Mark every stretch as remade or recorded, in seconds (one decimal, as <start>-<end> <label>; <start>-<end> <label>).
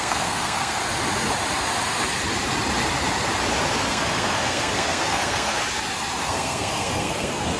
0.0-0.8 remade; 0.8-3.9 recorded; 3.9-5.6 remade; 5.6-6.2 recorded; 6.2-7.6 remade